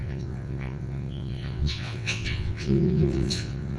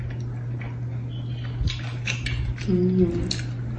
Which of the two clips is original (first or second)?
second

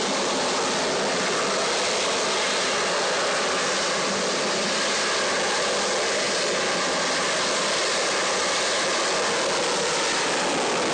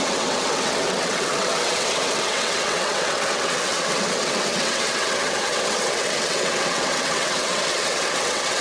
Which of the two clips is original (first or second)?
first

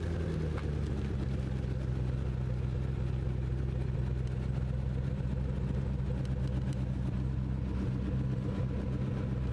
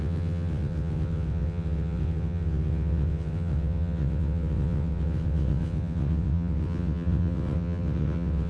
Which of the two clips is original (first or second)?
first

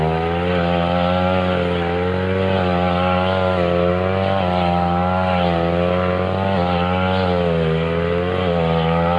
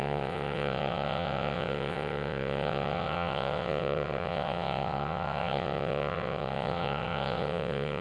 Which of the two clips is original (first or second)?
first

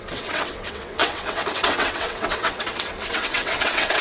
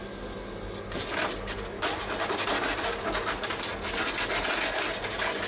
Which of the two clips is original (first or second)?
second